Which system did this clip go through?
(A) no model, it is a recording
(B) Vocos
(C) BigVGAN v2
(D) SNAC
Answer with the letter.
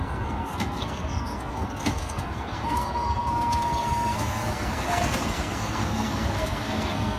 D